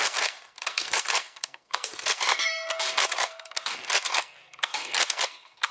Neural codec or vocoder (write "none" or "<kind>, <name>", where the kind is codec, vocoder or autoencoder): codec, SNAC